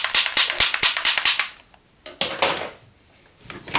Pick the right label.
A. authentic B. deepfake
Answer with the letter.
A